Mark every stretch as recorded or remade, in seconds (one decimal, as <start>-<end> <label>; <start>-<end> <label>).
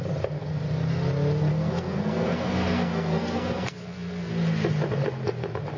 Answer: 0.0-1.5 recorded; 1.5-4.3 remade; 4.3-5.8 recorded